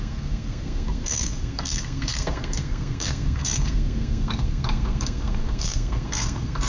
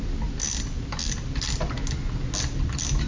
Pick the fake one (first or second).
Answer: first